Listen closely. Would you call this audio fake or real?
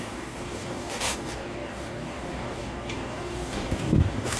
fake